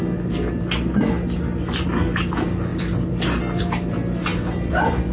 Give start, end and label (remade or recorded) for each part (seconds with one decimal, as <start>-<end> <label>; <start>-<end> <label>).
0.0-4.3 recorded; 4.3-5.1 remade